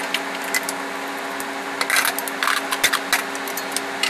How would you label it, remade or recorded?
recorded